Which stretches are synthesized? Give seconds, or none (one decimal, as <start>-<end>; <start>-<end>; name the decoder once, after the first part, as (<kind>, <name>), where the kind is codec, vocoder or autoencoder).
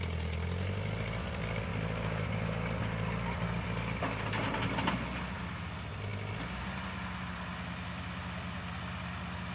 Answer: 1.7-4.9 (vocoder, BigVGAN v2); 6.1-6.6